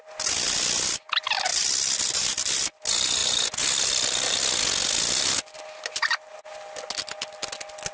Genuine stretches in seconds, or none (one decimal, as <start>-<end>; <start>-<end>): 0.0-7.9

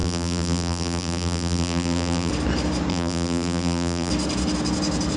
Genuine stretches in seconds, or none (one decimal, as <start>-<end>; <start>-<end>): 2.3-2.9; 4.1-5.2

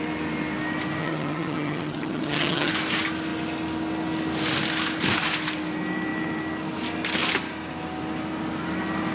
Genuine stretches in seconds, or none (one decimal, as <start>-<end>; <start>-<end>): 0.0-1.0; 2.7-9.1

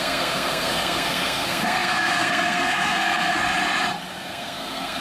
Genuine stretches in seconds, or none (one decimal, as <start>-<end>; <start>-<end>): 3.4-4.1

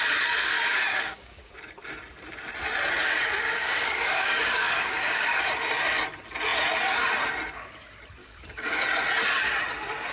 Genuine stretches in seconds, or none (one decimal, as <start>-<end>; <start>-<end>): 0.0-0.4; 1.5-3.0; 5.4-8.2; 8.8-10.1

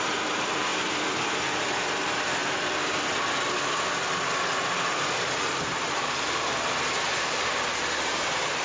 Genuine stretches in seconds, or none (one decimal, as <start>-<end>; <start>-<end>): 2.4-5.4